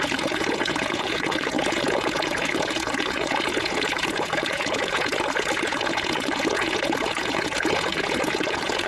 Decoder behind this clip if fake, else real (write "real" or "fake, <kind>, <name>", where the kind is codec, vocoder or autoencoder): fake, vocoder, Vocos